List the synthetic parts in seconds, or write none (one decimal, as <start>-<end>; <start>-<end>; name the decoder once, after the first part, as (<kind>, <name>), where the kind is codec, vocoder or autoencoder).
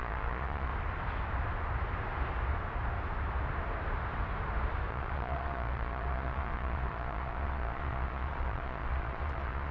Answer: 0.0-0.7 (vocoder, Vocos); 4.9-9.7